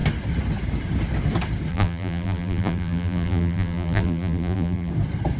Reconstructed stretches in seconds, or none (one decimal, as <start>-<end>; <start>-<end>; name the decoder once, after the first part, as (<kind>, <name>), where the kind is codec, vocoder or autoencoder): 1.7-4.9 (vocoder, BigVGAN v2)